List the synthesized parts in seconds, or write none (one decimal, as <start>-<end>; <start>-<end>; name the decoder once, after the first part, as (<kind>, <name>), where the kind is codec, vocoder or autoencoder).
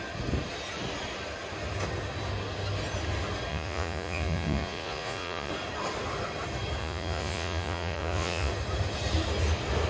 3.5-5.5 (vocoder, Vocos); 6.8-8.5